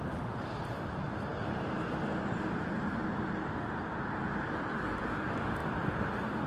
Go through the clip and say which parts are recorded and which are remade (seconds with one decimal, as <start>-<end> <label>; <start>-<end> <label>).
0.0-6.5 recorded